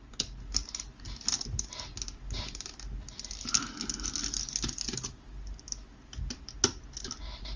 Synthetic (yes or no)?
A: no